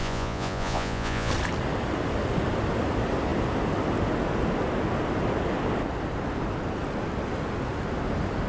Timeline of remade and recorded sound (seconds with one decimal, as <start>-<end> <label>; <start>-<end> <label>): 0.0-1.3 remade; 1.3-8.5 recorded